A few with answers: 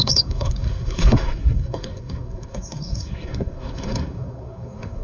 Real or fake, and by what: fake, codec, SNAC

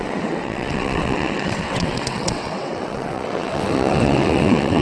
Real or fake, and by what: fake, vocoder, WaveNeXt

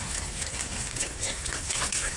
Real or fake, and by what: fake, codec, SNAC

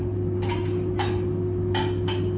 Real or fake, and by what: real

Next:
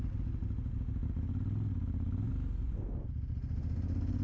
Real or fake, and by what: real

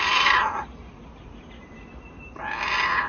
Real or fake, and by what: real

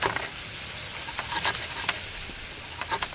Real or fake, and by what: real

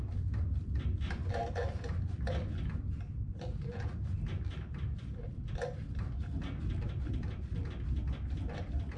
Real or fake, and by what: real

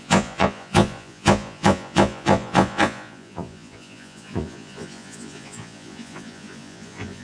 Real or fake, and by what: fake, vocoder, Vocos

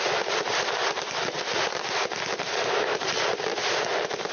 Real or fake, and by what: real